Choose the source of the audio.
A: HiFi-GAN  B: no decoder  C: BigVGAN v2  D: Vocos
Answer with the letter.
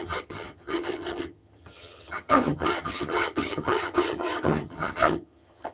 A